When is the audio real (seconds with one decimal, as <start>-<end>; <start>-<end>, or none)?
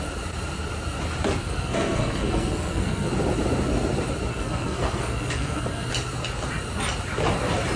0.0-1.4; 3.1-4.3; 5.9-7.8